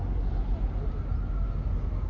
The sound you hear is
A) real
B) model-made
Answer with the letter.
A